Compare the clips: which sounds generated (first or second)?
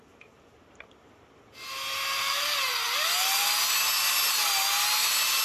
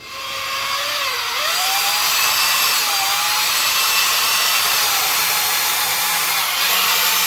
second